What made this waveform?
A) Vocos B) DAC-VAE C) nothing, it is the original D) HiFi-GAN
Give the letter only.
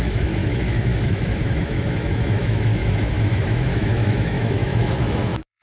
B